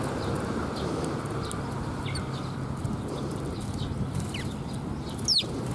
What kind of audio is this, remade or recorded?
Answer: recorded